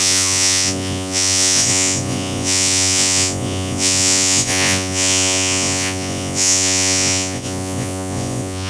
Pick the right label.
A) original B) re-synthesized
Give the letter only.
B